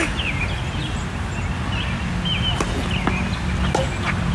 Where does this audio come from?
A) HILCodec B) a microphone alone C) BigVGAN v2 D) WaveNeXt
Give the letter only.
B